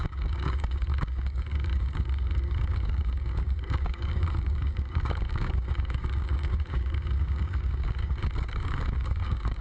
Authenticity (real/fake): fake